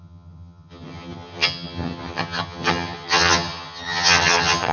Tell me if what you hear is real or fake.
fake